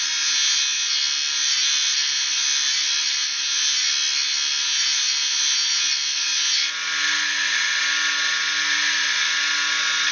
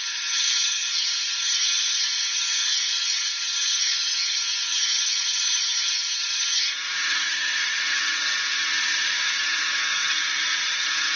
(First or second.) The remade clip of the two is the second